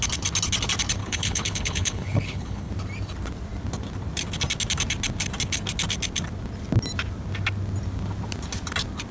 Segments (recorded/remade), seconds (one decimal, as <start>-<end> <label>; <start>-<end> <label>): 0.0-1.0 recorded; 1.0-2.7 remade; 2.7-9.1 recorded

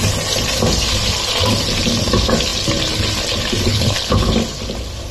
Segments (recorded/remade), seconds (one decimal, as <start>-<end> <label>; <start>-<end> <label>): 0.0-3.7 recorded; 3.7-4.3 remade; 4.3-5.1 recorded

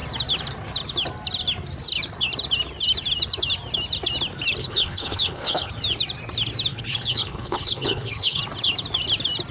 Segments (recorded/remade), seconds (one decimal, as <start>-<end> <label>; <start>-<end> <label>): 0.0-4.6 recorded; 4.6-5.7 remade; 5.7-6.7 recorded; 6.7-8.4 remade; 8.4-9.5 recorded

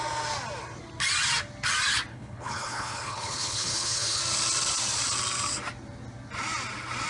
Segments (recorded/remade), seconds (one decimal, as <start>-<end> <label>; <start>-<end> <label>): 0.0-2.1 recorded; 2.1-4.2 remade; 4.2-7.1 recorded

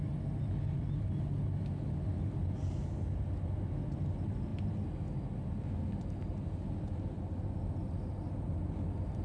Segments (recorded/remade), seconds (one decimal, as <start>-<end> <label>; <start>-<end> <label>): 0.0-9.2 recorded